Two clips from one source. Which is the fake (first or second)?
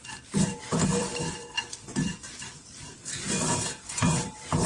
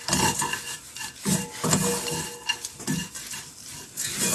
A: first